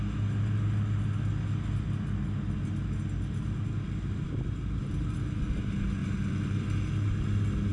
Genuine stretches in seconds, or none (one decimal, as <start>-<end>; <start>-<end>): 0.0-7.7